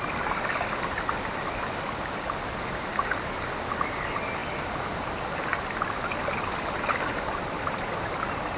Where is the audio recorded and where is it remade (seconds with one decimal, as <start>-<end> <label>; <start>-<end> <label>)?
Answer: 0.0-8.6 recorded